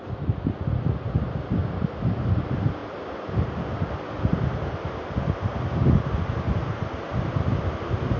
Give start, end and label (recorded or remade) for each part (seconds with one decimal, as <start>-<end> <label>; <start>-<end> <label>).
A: 0.0-8.2 recorded